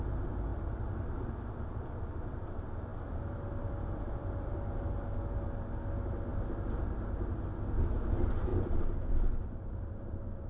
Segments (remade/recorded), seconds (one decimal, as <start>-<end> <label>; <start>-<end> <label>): 0.0-0.5 recorded; 0.5-1.7 remade; 1.7-2.9 recorded; 2.9-4.9 remade; 4.9-8.5 recorded; 8.5-10.5 remade